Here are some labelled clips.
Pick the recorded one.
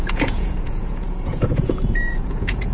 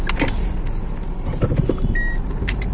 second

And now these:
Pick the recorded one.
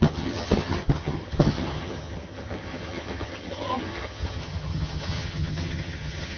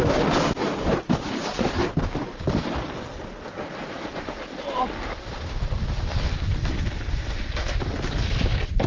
second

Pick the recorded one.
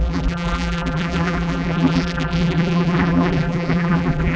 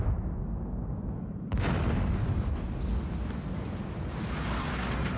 second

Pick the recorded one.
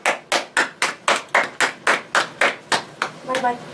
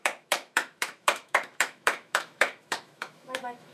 first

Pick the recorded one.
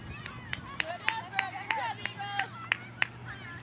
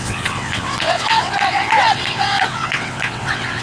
first